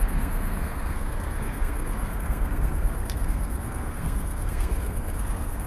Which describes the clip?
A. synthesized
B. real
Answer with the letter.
A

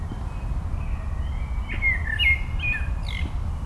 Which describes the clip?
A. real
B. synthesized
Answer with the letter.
A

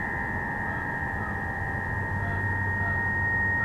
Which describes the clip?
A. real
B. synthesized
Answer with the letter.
A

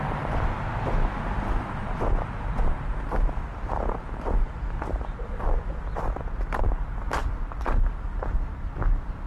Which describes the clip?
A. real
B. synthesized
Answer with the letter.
A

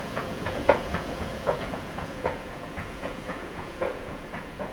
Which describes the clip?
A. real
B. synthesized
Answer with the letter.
B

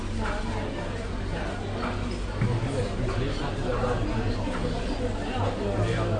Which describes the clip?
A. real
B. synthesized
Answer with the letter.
A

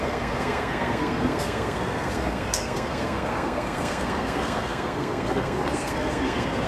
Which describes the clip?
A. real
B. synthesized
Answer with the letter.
B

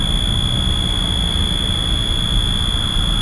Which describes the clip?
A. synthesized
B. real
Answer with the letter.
B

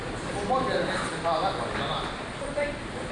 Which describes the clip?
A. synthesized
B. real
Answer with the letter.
B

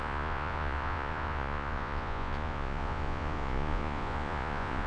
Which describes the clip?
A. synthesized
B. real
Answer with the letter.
A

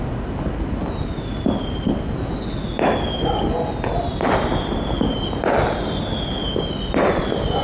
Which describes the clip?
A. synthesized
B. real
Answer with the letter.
B